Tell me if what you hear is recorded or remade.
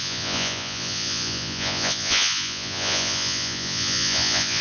remade